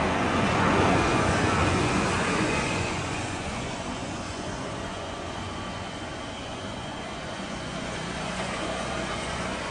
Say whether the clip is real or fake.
fake